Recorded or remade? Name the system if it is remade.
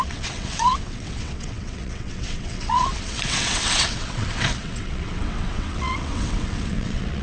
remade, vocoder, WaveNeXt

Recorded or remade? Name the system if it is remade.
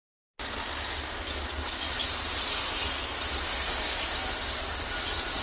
recorded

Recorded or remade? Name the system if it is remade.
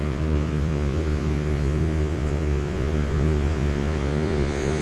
remade, vocoder, Vocos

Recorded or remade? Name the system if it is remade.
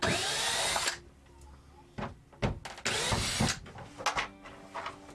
recorded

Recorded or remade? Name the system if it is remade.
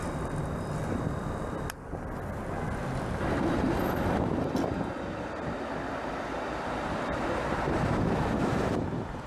recorded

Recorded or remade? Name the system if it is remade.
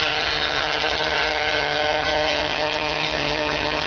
remade, vocoder, HiFi-GAN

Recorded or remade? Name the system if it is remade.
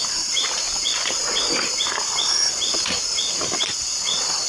recorded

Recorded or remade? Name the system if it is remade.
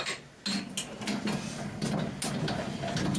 recorded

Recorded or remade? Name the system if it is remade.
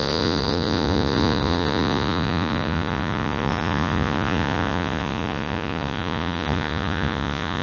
remade, vocoder, Vocos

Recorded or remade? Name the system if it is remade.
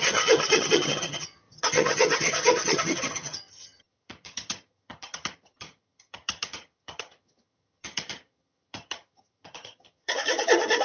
remade, vocoder, HiFi-GAN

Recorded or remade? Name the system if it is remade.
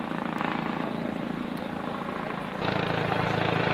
remade, vocoder, BigVGAN v2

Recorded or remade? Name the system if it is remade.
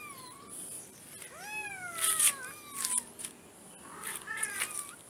recorded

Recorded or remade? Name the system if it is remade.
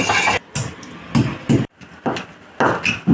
recorded